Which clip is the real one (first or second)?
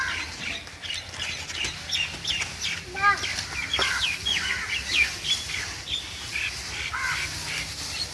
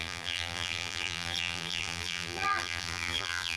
first